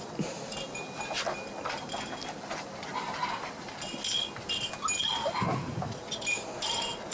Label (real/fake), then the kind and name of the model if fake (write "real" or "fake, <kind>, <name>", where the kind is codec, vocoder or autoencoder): real